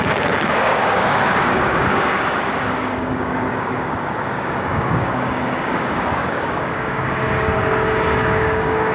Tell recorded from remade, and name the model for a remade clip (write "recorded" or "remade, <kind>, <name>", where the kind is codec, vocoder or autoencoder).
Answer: remade, codec, DAC